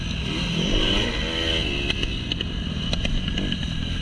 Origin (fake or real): real